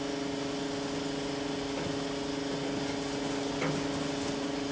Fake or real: real